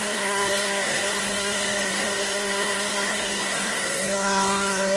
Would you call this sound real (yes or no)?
no